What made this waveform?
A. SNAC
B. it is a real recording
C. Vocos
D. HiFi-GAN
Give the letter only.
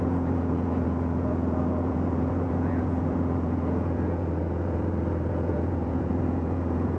C